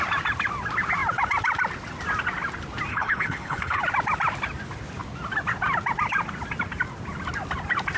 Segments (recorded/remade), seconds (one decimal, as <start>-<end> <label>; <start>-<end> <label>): 0.0-2.9 recorded; 2.9-3.8 remade; 3.8-8.0 recorded